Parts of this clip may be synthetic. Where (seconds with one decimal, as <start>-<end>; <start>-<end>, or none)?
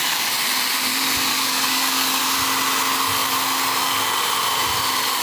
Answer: 1.3-2.2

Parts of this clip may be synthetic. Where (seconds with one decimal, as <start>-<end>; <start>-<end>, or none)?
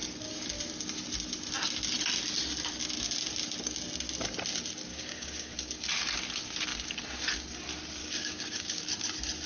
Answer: 4.9-5.5; 8.0-8.8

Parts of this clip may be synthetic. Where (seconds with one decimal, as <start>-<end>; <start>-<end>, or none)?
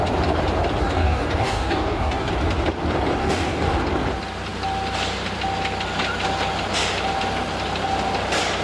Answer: 0.8-2.3; 3.2-3.8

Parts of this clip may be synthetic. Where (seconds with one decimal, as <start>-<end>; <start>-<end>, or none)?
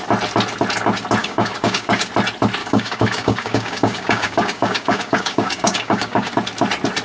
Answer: 1.2-2.1; 2.6-6.3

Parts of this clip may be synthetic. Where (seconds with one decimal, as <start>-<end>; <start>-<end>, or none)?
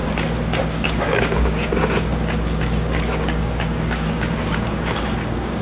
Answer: 0.6-5.6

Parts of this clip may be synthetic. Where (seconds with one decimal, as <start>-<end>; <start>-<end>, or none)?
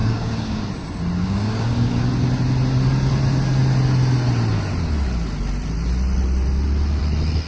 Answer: 0.0-0.6; 1.2-2.1